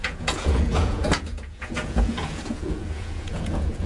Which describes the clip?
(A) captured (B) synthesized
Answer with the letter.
B